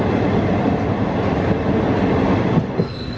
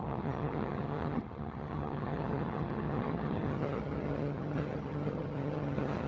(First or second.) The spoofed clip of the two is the second